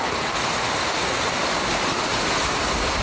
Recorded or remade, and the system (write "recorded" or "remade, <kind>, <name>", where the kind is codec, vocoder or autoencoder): recorded